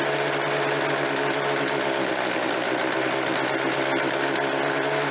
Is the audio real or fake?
real